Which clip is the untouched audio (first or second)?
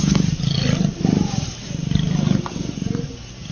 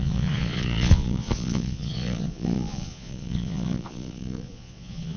first